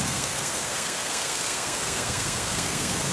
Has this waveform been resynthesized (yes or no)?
yes